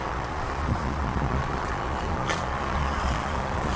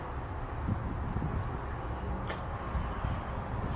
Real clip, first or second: second